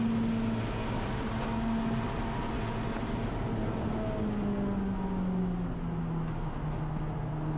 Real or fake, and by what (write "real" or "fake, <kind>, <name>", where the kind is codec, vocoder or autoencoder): real